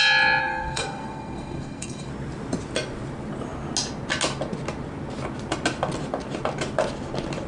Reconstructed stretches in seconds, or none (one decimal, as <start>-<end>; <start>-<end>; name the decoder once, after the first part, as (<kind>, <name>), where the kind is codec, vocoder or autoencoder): 0.4-2.1 (codec, SNAC)